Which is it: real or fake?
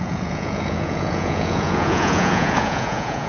fake